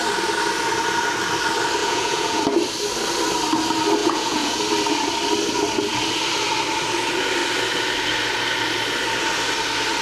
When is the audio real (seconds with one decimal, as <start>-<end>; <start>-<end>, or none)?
0.0-1.8; 2.4-4.0; 4.6-10.0